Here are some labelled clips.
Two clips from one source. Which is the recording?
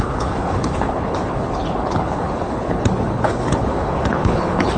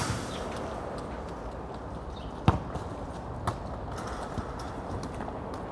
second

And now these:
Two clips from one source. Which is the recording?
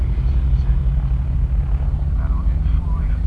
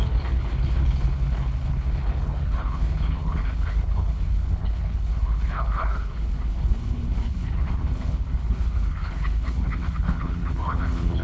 first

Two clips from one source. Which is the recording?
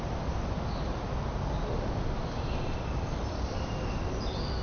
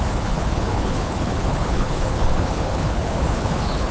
first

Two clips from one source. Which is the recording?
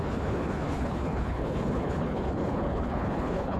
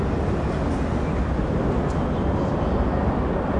second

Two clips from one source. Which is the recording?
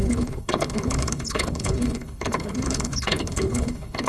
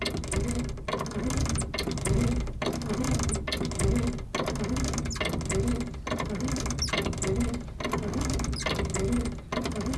second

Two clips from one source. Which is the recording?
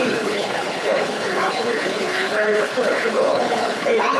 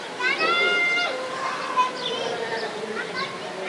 second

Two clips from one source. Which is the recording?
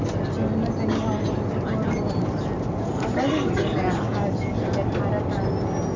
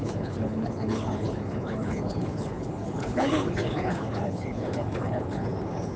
first